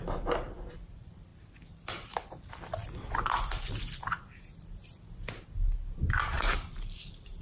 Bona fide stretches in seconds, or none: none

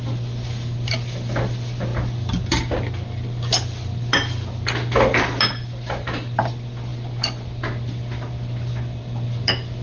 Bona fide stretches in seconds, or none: 0.0-9.8

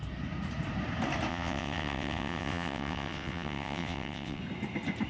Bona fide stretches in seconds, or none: 0.0-1.3; 4.4-5.1

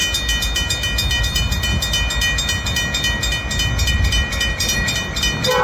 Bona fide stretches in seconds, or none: 0.0-1.2; 1.7-3.9

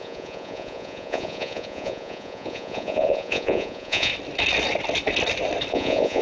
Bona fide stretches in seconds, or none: 4.1-5.7

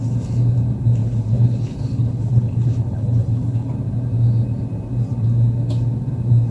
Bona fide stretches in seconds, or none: 0.0-1.0; 3.7-6.5

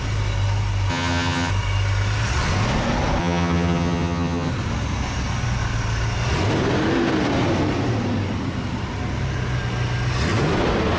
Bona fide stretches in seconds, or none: 0.0-0.9; 1.5-3.2; 4.5-11.0

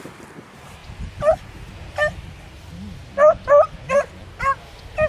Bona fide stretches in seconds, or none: 0.0-5.1